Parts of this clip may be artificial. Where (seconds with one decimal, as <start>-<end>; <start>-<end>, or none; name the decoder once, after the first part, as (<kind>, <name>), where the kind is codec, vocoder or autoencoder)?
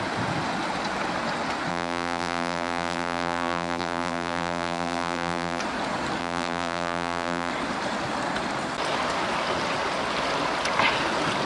1.7-5.6 (vocoder, BigVGAN v2); 6.2-7.5